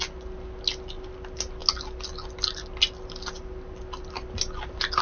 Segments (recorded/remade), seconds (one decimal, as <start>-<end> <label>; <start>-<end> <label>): 0.0-5.0 recorded